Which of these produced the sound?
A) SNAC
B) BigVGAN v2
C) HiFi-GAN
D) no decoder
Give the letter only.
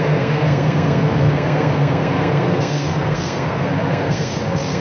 A